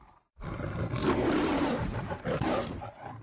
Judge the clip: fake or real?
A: fake